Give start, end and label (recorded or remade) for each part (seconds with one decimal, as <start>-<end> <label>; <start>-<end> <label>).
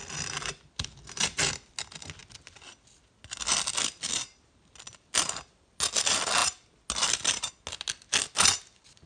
0.0-9.1 recorded